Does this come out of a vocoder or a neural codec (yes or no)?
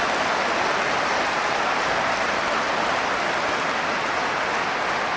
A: no